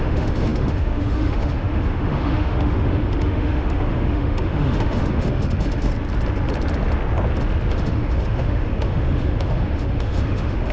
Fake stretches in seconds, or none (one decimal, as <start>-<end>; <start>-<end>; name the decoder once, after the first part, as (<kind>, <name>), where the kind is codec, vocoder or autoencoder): 0.0-5.9 (autoencoder, DAC-VAE); 7.7-10.7